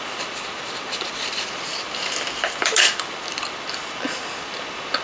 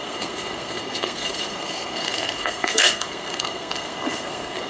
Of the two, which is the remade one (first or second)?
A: second